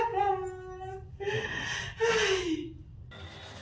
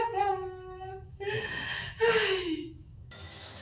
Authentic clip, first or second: first